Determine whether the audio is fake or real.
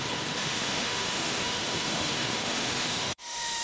fake